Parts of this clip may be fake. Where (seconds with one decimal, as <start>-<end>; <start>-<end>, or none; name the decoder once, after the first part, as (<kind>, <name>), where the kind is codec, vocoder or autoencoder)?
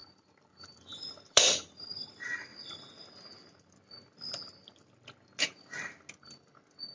0.0-1.6 (vocoder, BigVGAN v2)